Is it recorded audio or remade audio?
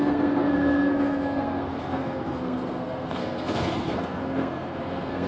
remade